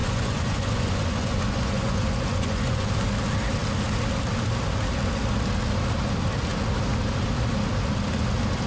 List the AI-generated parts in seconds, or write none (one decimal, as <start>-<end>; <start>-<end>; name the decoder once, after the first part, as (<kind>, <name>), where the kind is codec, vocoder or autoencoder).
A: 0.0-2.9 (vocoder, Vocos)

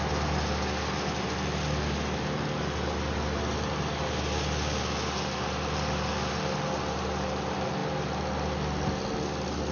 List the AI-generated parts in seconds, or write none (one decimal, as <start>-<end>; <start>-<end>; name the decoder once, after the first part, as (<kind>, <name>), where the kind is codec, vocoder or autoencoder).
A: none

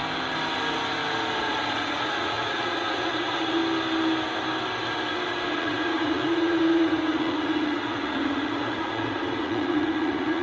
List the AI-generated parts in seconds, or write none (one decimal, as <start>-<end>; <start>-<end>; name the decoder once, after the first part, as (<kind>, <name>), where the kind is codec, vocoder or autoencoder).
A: 1.4-3.6 (vocoder, Vocos); 5.5-10.4

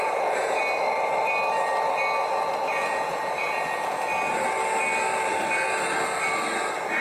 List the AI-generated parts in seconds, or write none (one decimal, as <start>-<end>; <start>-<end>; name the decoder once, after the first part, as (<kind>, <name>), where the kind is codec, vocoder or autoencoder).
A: 0.0-0.6 (vocoder, Vocos); 2.7-4.1